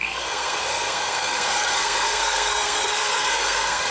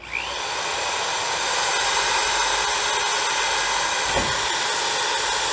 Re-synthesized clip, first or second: first